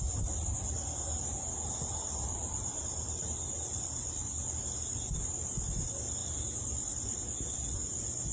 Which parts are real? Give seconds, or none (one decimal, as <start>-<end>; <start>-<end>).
0.0-8.3